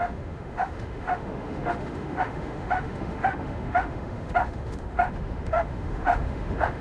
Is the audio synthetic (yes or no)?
yes